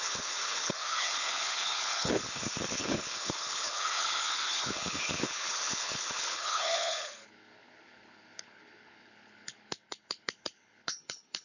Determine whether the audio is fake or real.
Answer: fake